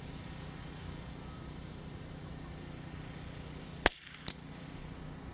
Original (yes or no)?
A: yes